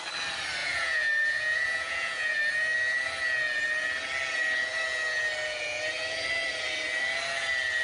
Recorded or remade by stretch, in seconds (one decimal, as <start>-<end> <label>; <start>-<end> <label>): 0.0-0.6 recorded; 0.6-2.4 remade; 2.4-7.8 recorded